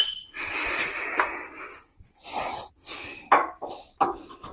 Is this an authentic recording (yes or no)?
yes